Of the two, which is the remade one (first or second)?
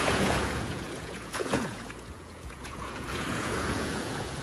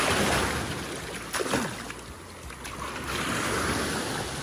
first